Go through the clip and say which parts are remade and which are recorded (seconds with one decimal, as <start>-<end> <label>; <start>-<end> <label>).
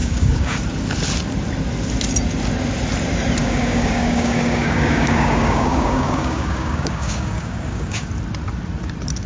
0.0-0.6 remade; 0.6-3.4 recorded; 3.4-8.1 remade; 8.1-9.3 recorded